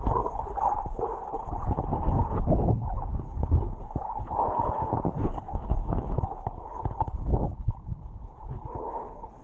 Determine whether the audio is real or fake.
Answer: fake